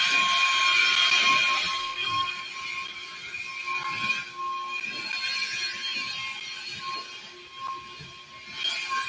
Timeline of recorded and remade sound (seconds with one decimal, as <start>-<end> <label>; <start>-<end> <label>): 0.0-1.8 recorded; 1.8-2.4 remade; 2.4-9.1 recorded